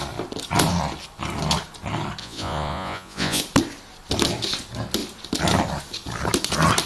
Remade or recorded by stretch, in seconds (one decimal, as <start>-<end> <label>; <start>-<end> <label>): 0.0-2.2 recorded; 2.2-3.4 remade; 3.4-6.9 recorded